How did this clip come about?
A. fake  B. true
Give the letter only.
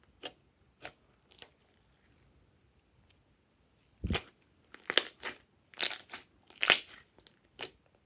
B